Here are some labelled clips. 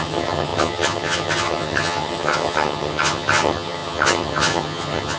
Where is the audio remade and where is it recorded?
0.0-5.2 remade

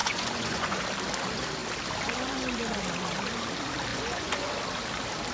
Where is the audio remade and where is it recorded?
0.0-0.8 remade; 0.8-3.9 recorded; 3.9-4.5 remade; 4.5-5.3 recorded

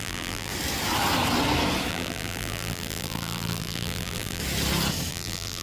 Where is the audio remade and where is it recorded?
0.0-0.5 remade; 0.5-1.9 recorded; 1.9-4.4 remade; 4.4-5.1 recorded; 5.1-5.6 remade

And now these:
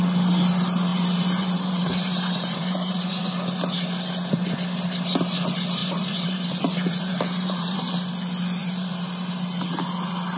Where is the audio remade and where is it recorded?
0.0-0.9 recorded; 0.9-3.2 remade; 3.2-5.8 recorded; 5.8-7.8 remade; 7.8-8.6 recorded; 8.6-9.7 remade; 9.7-10.4 recorded

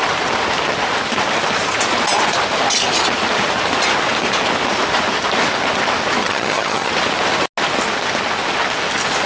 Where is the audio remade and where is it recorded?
0.0-6.2 recorded; 6.2-6.9 remade; 6.9-9.3 recorded